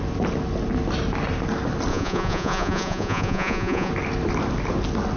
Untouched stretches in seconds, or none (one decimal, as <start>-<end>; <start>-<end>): 0.0-1.9; 3.9-5.2